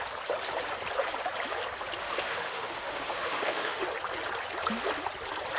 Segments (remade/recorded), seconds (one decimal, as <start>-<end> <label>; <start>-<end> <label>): 0.0-2.0 recorded; 2.0-3.8 remade; 3.8-5.6 recorded